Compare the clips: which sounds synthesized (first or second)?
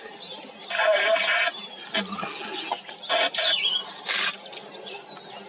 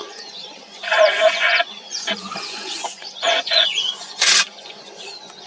second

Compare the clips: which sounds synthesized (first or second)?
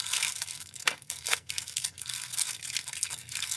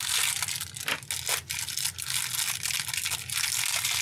first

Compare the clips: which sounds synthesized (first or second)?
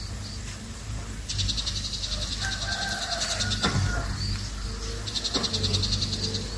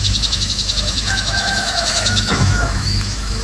second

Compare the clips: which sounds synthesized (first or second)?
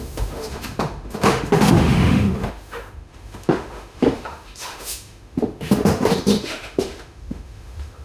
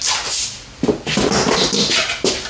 first